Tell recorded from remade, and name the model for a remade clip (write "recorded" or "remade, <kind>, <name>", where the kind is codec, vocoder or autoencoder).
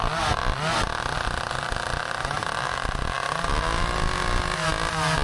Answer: recorded